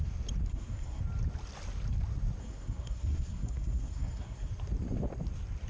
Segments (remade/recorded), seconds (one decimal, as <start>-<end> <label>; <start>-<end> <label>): 0.0-0.5 recorded; 0.5-1.0 remade; 1.0-2.4 recorded; 2.4-4.5 remade; 4.5-5.7 recorded